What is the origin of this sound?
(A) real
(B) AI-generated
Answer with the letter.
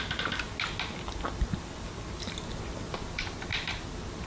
A